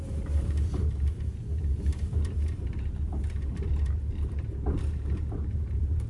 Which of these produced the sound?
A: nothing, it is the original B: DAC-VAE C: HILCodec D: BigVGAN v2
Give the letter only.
D